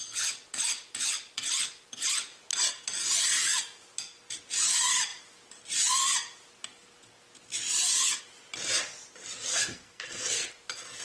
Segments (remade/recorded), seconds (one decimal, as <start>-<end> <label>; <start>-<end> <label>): 0.0-9.5 recorded; 9.5-10.5 remade; 10.5-11.0 recorded